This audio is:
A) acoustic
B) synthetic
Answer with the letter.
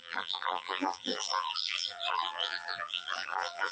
B